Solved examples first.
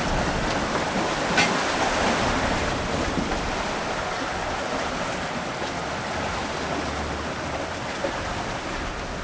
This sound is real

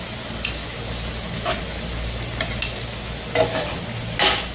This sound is real